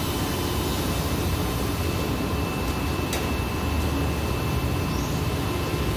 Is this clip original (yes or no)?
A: yes